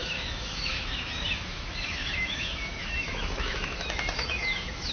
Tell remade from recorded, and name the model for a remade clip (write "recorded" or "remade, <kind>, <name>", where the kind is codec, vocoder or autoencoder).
remade, autoencoder, DAC-VAE